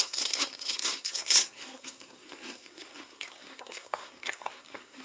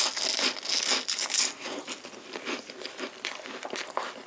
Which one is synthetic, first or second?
first